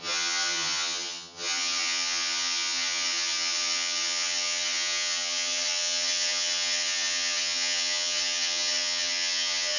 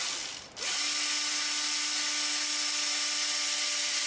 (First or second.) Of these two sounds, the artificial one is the first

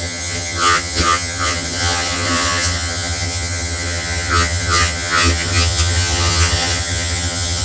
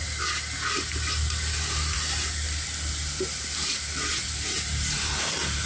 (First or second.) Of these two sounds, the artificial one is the first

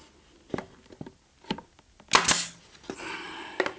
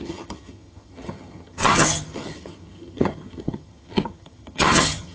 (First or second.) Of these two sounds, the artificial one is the second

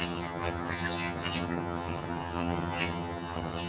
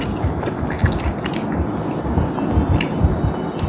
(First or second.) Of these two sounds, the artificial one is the first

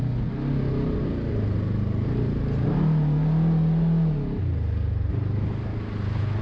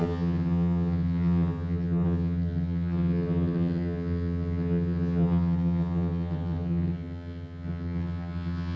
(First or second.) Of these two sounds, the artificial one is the second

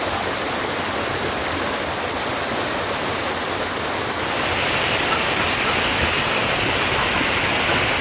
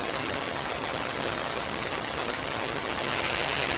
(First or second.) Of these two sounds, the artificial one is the second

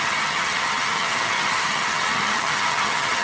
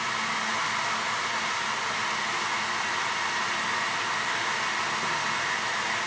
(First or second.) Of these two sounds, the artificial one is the first